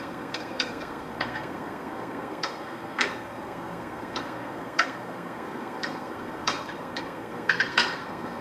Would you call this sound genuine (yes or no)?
no